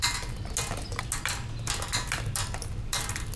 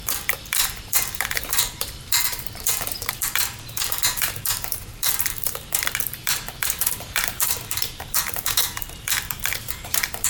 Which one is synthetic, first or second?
second